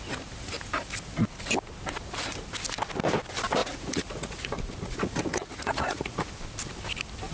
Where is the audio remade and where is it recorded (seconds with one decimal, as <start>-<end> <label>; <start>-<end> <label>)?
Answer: 0.0-3.6 recorded; 3.6-6.3 remade; 6.3-7.3 recorded